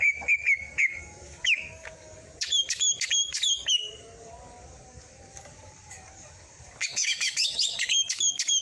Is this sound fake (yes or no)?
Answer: yes